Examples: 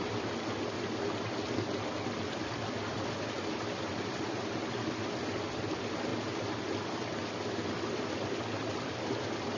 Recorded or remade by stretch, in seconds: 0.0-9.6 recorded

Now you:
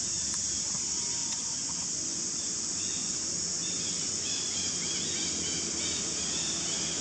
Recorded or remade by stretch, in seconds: 0.0-1.2 recorded; 1.2-5.3 remade; 5.3-7.0 recorded

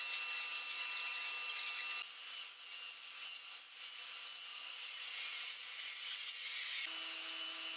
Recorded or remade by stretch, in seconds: 0.0-4.5 recorded; 4.5-5.9 remade; 5.9-7.8 recorded

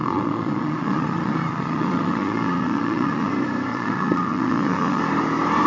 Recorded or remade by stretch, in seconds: 0.0-3.3 remade; 3.3-3.7 recorded; 3.7-5.0 remade; 5.0-5.7 recorded

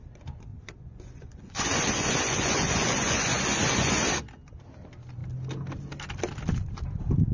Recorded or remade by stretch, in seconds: 0.0-0.5 recorded; 0.5-4.0 remade; 4.0-7.3 recorded

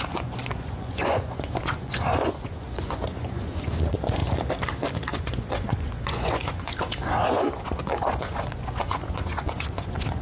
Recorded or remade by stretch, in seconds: 0.0-4.2 remade; 4.2-5.1 recorded; 5.1-6.7 remade; 6.7-7.3 recorded; 7.3-10.2 remade

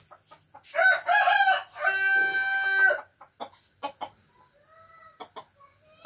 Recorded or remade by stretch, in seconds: 0.0-6.1 recorded